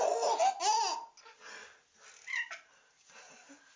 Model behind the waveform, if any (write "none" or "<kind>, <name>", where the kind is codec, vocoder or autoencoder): none